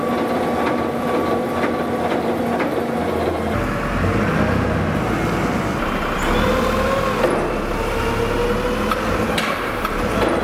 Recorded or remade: recorded